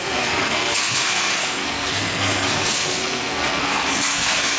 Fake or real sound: fake